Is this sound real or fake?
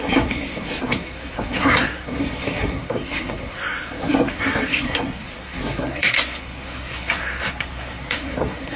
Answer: fake